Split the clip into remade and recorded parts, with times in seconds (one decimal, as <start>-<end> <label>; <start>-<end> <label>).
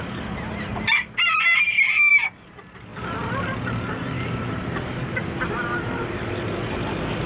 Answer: 0.0-0.7 remade; 0.7-2.1 recorded; 2.1-2.9 remade; 2.9-4.2 recorded; 4.2-7.3 remade